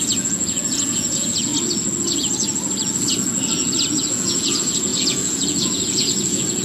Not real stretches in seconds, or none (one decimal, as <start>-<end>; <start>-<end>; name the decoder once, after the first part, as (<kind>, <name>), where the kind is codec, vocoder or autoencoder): 0.0-1.5 (vocoder, Vocos); 3.9-6.6